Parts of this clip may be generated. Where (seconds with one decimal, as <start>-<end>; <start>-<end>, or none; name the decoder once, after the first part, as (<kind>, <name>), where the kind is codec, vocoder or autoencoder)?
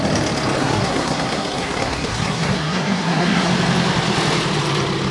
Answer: 0.6-3.5 (codec, SNAC)